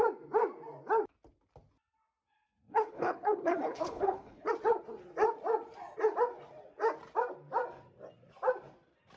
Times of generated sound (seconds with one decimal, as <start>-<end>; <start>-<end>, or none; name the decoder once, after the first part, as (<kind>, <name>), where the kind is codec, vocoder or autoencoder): 2.7-4.5 (codec, HILCodec)